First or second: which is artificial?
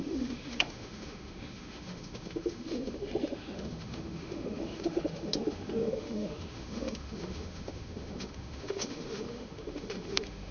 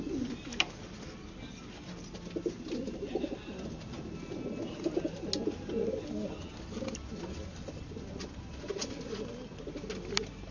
first